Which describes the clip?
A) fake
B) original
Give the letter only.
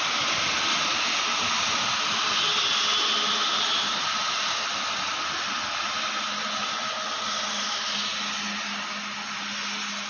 B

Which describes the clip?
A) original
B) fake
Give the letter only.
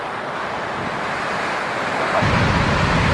A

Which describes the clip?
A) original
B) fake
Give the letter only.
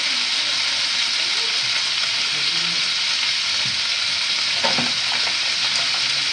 A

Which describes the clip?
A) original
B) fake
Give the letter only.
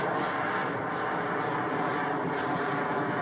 A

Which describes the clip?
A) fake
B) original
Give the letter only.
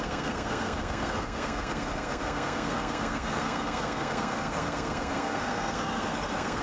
A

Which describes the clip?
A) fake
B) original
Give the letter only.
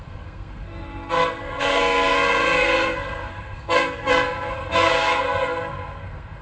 A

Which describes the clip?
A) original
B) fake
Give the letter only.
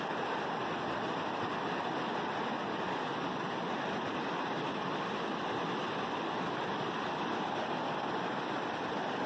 A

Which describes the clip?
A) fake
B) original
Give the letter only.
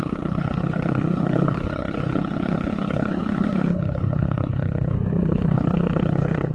A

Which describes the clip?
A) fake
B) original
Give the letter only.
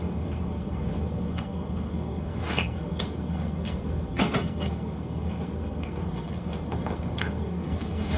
A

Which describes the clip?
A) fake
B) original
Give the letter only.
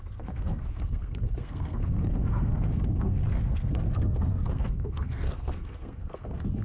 A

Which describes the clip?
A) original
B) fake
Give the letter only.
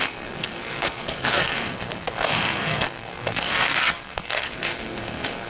B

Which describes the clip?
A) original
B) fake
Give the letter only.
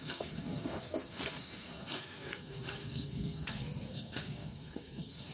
B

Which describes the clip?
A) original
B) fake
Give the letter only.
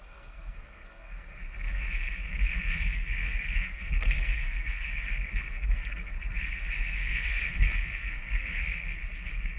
B